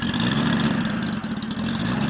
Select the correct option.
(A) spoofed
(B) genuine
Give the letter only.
B